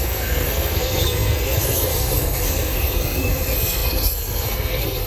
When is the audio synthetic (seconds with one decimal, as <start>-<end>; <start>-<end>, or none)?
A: 0.0-5.1